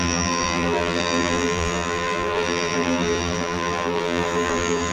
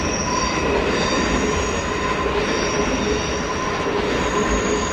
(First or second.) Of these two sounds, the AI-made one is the first